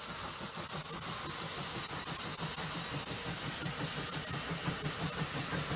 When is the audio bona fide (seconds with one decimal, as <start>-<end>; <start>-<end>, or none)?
0.0-5.8